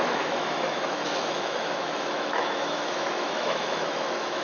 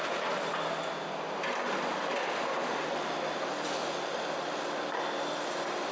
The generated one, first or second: first